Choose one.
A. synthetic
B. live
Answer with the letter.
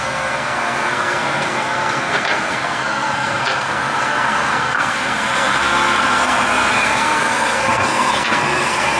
A